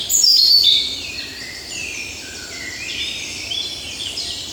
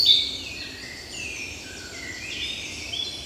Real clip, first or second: second